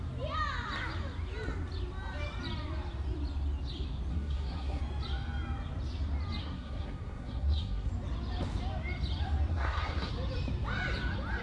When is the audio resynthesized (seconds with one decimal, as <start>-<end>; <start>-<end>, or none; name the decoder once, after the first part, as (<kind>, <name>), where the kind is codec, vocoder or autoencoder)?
4.1-4.8 (codec, SNAC); 6.4-7.9; 9.5-10.1